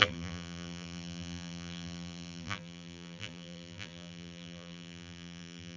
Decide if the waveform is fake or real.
fake